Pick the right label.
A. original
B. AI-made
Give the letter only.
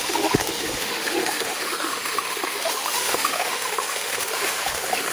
B